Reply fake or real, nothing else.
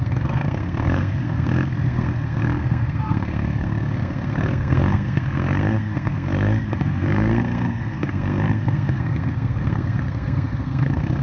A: fake